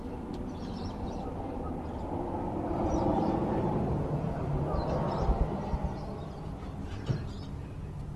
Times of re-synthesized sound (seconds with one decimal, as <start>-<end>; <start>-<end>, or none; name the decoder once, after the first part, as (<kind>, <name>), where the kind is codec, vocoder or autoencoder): 3.1-3.7 (vocoder, BigVGAN v2)